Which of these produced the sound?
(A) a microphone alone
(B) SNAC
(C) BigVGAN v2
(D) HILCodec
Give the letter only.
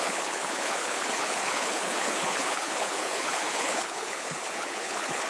D